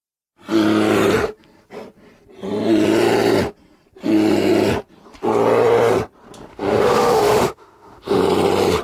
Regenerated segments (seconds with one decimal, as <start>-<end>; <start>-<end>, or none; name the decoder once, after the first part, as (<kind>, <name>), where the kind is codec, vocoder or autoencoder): 6.5-8.2 (autoencoder, DAC-VAE)